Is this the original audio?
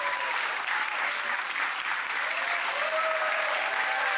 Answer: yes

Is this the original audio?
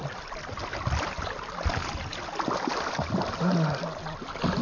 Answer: yes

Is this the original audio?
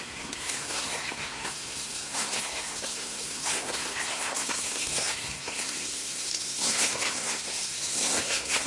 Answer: no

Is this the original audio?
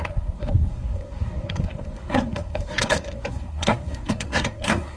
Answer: no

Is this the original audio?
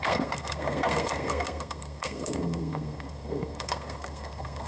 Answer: no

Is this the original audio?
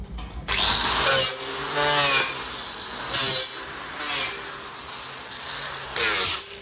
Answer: yes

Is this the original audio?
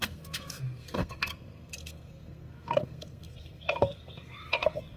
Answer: no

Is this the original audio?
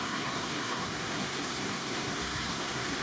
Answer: no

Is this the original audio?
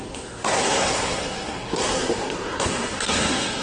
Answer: no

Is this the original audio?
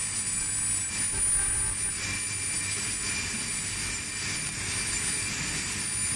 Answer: yes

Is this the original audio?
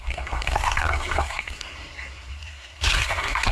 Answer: no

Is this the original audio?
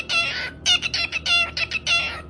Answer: yes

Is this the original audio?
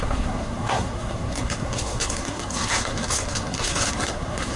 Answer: no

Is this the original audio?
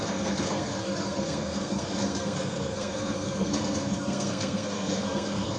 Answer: no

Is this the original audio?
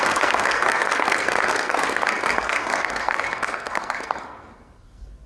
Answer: no